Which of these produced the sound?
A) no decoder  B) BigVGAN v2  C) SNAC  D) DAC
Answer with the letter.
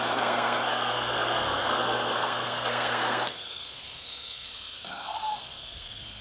C